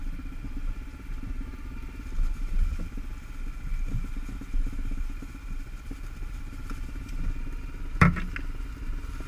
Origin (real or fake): real